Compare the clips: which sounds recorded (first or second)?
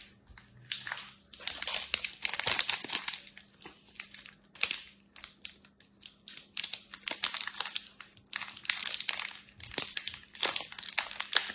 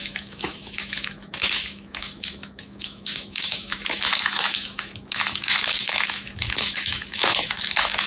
first